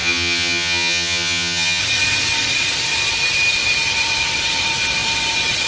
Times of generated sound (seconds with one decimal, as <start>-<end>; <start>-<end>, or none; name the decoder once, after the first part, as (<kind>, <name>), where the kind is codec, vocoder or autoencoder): 0.0-1.8 (vocoder, HiFi-GAN)